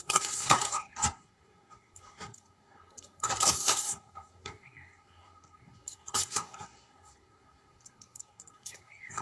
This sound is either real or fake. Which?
fake